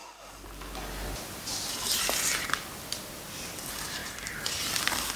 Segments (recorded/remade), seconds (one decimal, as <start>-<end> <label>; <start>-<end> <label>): 0.0-5.2 recorded